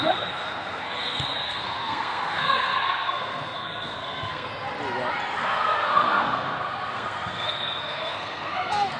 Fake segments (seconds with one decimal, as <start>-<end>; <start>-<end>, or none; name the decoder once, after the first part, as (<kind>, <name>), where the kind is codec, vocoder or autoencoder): 0.0-4.5 (codec, SNAC); 5.4-9.0